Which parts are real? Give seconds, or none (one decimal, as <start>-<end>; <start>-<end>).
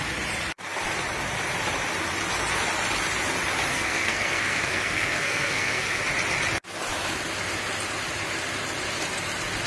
0.0-3.7; 6.0-9.7